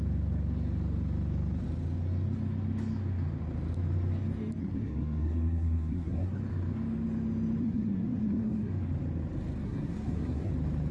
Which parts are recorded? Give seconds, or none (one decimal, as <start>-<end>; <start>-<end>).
0.0-4.6; 6.4-7.6; 8.7-9.6; 10.5-10.9